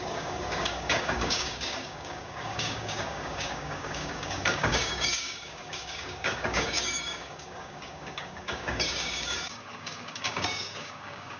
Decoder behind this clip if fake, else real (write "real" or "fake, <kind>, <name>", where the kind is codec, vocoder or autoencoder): fake, codec, DAC